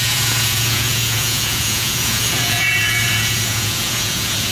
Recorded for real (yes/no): no